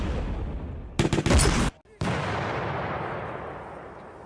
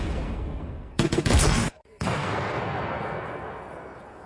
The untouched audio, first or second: first